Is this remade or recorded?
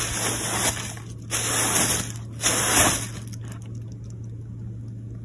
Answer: recorded